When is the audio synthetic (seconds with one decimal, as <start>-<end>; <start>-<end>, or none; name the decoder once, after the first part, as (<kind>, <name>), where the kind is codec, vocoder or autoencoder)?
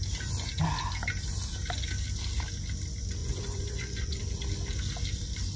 3.2-4.2 (vocoder, Vocos)